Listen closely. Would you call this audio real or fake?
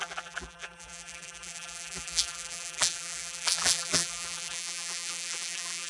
fake